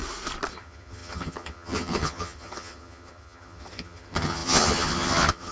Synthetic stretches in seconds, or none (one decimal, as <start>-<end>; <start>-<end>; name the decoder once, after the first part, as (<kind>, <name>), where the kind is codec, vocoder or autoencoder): 0.5-5.5 (vocoder, HiFi-GAN)